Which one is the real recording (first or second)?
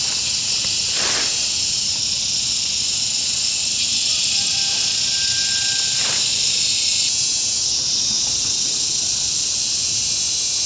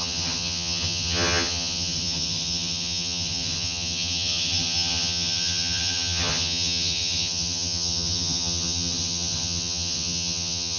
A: first